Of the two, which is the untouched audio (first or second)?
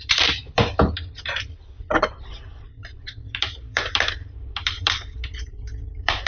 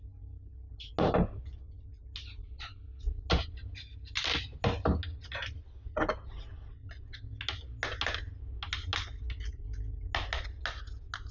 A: second